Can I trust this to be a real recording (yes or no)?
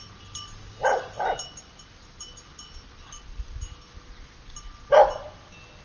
yes